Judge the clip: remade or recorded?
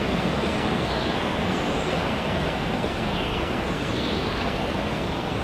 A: remade